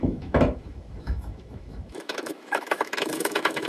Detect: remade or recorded remade